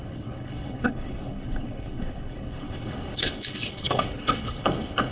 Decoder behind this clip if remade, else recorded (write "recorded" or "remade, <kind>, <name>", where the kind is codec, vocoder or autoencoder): remade, codec, HILCodec